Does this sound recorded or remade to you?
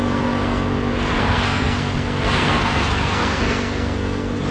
remade